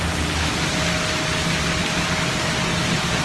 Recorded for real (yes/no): yes